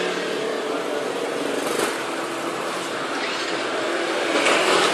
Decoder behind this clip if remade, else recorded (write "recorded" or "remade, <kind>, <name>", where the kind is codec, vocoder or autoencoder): recorded